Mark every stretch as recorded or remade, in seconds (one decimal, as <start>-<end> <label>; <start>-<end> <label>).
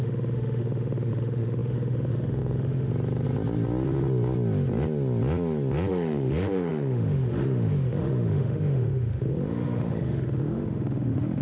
0.0-2.9 remade; 2.9-5.9 recorded; 5.9-11.4 remade